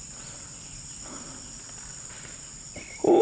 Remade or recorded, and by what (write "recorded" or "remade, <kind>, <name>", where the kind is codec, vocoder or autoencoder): recorded